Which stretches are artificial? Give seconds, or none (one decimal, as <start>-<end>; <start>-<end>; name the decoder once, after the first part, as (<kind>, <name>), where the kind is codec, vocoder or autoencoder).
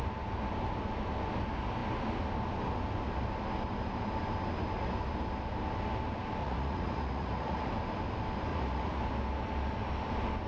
6.4-7.7 (vocoder, Vocos); 8.5-9.0